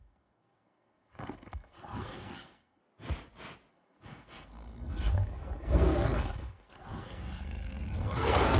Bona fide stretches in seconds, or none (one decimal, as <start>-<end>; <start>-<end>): 2.8-3.7

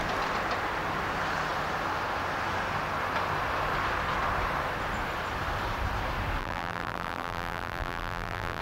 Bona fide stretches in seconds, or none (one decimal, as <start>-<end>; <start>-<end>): 0.0-6.4

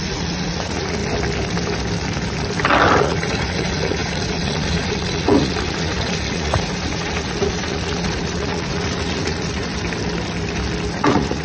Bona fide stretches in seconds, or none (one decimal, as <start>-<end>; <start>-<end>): 1.0-3.0; 9.7-10.9

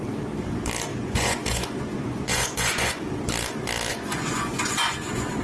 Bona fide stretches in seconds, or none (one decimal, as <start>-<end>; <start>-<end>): 0.0-0.9; 3.0-3.9

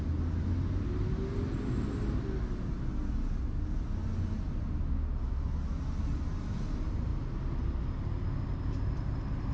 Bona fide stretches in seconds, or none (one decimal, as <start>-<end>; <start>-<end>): 0.0-9.5

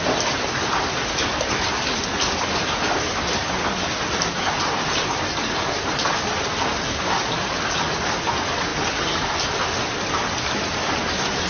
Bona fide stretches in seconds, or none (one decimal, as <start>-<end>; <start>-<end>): 0.0-11.5

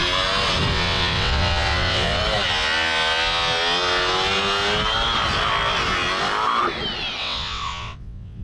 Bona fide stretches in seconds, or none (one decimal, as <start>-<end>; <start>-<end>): 0.0-0.7; 2.2-7.2